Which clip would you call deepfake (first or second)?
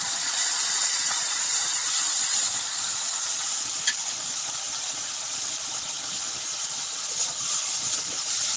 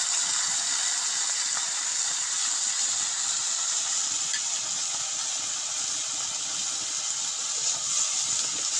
first